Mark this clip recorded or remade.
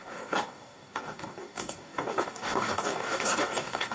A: remade